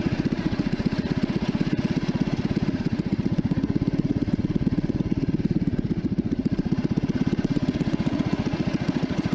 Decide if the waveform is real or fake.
fake